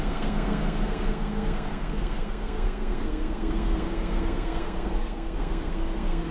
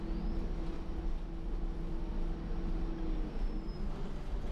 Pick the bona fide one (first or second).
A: second